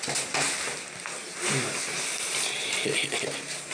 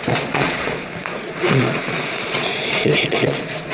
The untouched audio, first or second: first